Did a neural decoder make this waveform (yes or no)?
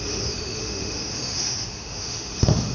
yes